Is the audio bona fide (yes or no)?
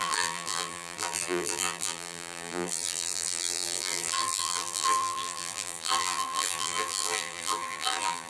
no